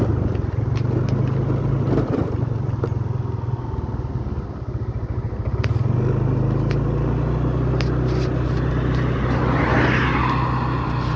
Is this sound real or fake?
real